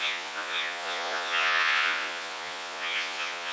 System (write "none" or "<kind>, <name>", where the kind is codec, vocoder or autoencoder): vocoder, Vocos